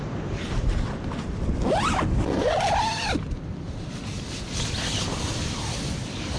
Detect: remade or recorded recorded